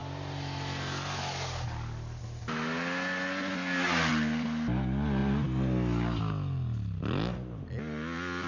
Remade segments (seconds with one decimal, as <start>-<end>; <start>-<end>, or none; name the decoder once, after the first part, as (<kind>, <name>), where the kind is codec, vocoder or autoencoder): none